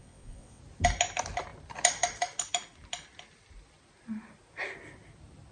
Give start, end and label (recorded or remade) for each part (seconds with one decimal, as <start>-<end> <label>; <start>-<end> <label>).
0.0-0.6 remade; 0.6-5.5 recorded